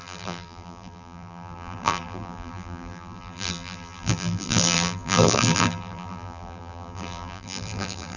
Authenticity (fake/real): fake